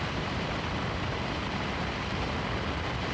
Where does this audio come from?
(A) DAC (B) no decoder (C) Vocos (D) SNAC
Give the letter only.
B